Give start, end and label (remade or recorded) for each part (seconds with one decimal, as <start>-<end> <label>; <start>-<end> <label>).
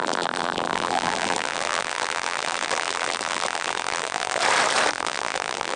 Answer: 0.0-4.4 remade; 4.4-4.9 recorded; 4.9-5.8 remade